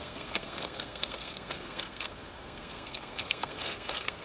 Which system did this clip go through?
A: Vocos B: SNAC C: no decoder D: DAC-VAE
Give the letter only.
B